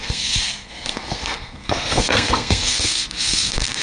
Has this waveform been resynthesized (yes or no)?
yes